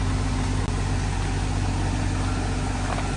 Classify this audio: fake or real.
real